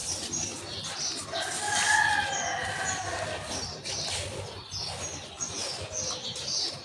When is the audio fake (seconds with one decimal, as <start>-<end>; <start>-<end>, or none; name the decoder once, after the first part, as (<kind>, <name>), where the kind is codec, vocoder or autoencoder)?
none

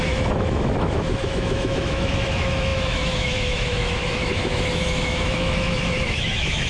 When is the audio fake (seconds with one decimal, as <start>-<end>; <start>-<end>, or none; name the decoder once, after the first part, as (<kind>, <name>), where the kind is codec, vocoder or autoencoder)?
0.0-6.7 (autoencoder, DAC-VAE)

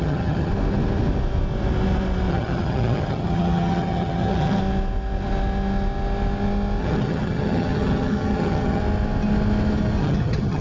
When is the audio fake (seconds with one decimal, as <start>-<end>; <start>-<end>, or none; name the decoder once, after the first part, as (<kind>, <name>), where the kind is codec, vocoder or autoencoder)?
0.0-0.5 (vocoder, HiFi-GAN); 2.3-4.6; 6.8-8.8; 10.0-10.6

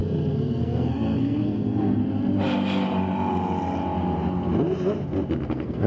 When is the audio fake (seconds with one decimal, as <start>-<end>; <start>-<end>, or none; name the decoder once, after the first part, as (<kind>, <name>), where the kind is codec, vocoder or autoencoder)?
0.0-2.0 (codec, SNAC); 5.5-5.9

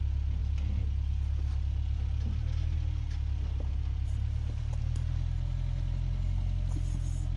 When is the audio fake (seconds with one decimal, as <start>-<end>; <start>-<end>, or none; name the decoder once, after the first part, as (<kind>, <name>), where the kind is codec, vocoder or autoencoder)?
none

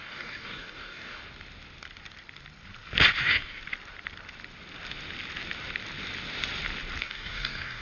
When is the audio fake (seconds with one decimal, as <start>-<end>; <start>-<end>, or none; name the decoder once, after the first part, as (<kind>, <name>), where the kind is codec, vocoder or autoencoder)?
0.0-1.2 (codec, DAC); 3.2-3.6; 7.0-7.8

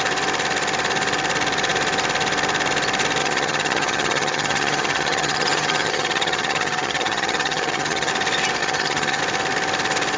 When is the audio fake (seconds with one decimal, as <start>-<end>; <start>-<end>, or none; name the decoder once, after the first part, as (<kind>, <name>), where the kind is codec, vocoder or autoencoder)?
3.2-8.1 (vocoder, HiFi-GAN); 8.6-9.2